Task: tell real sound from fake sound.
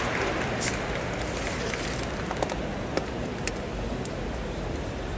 real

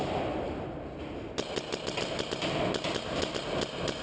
real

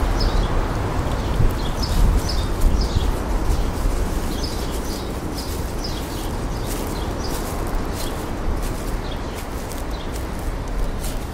real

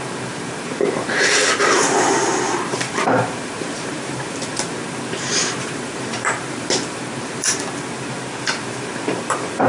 fake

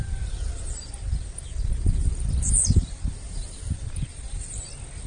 real